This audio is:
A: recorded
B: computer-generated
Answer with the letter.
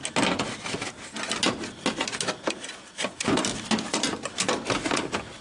A